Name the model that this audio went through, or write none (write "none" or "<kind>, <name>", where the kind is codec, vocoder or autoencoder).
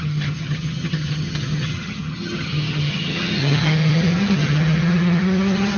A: vocoder, HiFi-GAN